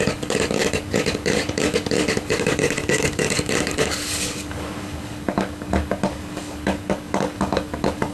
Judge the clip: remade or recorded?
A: remade